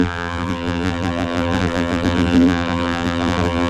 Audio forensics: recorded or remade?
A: remade